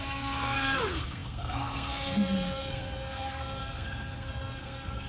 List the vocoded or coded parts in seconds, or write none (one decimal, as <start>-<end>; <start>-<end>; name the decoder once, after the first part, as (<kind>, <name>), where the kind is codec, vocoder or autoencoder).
0.0-5.1 (codec, SNAC)